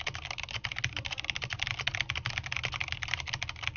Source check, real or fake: real